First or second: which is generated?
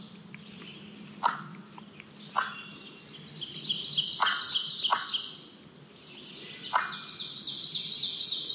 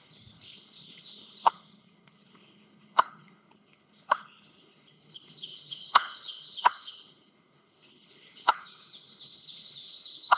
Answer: second